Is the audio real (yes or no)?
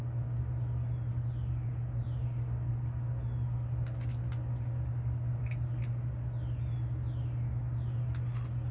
yes